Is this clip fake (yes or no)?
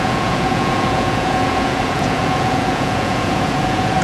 yes